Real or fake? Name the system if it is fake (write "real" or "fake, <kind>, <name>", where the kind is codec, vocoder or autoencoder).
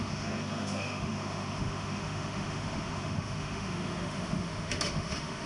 fake, autoencoder, DAC-VAE